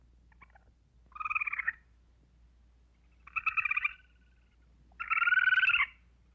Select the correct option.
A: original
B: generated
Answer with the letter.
A